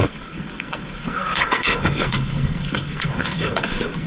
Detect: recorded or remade remade